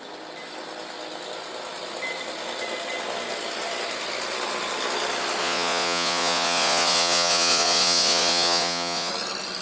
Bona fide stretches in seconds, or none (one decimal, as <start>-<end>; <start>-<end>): 0.0-5.4; 9.1-9.6